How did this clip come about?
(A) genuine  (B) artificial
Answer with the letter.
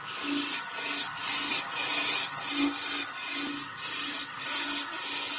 A